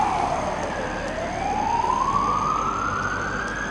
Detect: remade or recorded recorded